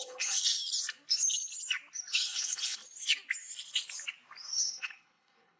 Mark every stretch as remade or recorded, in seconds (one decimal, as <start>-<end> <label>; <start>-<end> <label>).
0.0-0.4 remade; 0.4-2.1 recorded; 2.1-2.8 remade; 2.8-4.6 recorded; 4.6-5.6 remade